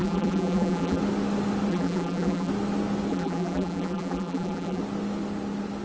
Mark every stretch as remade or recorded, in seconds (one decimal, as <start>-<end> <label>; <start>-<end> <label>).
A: 0.0-1.0 remade; 1.0-1.7 recorded; 1.7-2.5 remade; 2.5-3.1 recorded; 3.1-4.8 remade; 4.8-5.8 recorded